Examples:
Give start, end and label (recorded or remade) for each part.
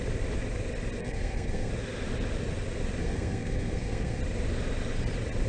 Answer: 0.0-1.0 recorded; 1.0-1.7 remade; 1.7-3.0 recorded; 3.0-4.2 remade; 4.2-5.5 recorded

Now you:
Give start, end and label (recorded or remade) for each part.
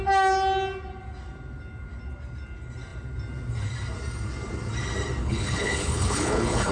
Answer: 0.0-5.2 recorded; 5.2-6.7 remade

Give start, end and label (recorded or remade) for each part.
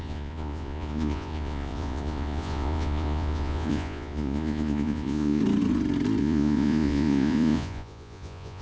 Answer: 0.0-5.4 remade; 5.4-6.2 recorded; 6.2-8.6 remade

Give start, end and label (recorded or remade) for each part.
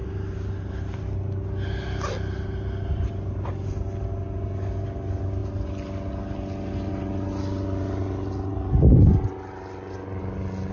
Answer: 0.0-10.7 recorded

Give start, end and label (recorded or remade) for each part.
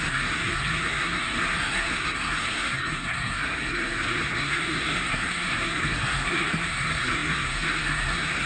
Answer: 0.0-8.5 remade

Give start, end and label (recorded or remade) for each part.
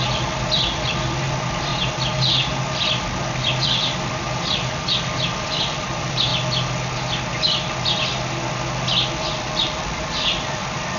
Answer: 0.0-1.7 remade; 1.7-3.0 recorded; 3.0-6.3 remade; 6.3-9.1 recorded; 9.1-11.0 remade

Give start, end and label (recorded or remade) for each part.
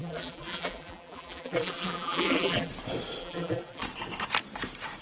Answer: 0.0-2.7 remade; 2.7-3.2 recorded; 3.2-3.8 remade; 3.8-5.0 recorded